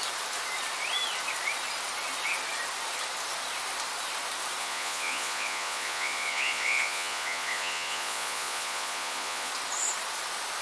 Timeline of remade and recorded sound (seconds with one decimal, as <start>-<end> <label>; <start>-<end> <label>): 0.0-4.6 recorded; 4.6-9.5 remade; 9.5-10.6 recorded